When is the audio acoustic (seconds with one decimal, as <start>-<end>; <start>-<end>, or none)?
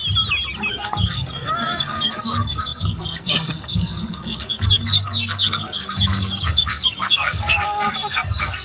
0.0-0.7